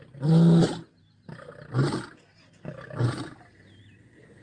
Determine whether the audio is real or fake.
real